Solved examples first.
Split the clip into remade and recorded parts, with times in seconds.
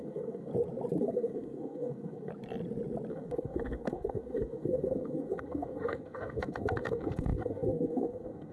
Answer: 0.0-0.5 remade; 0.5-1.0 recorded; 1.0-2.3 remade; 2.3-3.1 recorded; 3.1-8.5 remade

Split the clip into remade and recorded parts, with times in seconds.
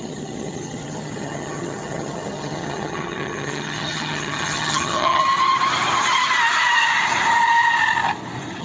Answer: 0.0-5.2 remade; 5.2-8.6 recorded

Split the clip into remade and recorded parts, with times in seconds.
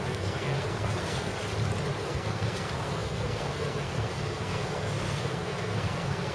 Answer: 0.0-1.3 remade; 1.3-2.0 recorded; 2.0-6.3 remade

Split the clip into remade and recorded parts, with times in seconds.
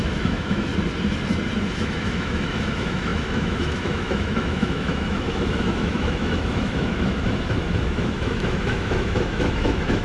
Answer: 0.0-0.7 remade; 0.7-1.7 recorded; 1.7-10.0 remade